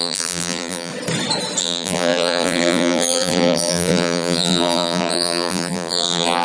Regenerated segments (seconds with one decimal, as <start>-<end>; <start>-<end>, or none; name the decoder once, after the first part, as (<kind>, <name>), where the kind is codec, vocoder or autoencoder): 0.0-0.9 (vocoder, BigVGAN v2); 1.6-6.4